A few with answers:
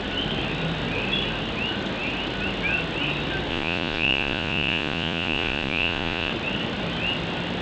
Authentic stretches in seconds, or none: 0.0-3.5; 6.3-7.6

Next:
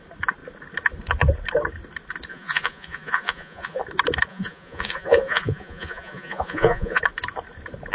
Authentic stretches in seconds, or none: 0.0-2.3; 3.8-4.3; 7.0-7.9

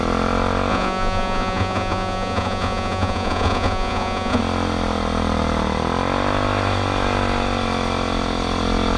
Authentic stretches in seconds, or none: 0.0-0.7; 4.4-9.0

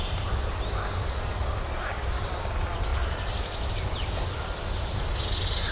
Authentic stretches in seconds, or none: 0.0-5.7

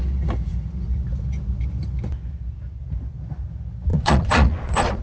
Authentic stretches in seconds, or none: 0.0-3.9

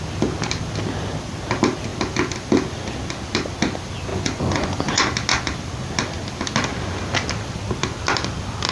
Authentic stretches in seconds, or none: 0.0-4.1; 5.0-8.7

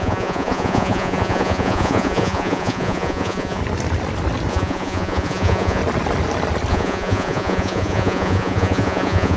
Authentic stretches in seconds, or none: 3.6-4.5; 5.8-6.7